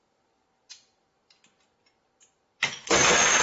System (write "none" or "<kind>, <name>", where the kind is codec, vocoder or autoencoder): vocoder, BigVGAN v2